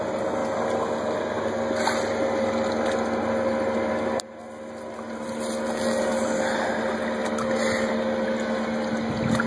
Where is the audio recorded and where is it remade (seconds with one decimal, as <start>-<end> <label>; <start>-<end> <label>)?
0.0-9.5 recorded